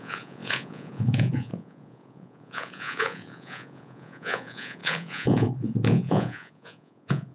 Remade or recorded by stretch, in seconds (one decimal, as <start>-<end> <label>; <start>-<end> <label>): 0.0-7.3 remade